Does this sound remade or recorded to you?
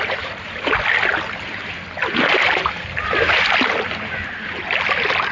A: recorded